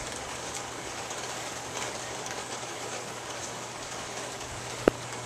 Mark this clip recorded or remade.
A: remade